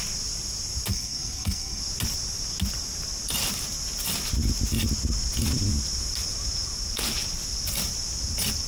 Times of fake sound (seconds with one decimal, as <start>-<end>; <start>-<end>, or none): 0.9-1.8